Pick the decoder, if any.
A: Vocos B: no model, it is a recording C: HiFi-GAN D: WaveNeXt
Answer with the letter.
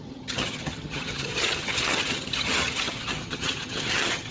C